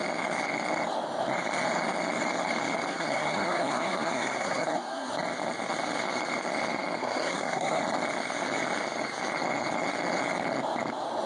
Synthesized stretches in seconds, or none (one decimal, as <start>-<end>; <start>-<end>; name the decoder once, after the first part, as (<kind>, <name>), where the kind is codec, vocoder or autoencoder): 2.9-5.1 (codec, SNAC); 7.0-7.8